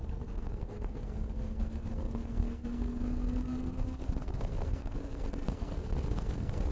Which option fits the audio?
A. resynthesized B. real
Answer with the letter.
A